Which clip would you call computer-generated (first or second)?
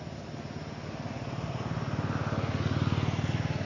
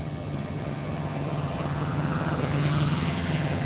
second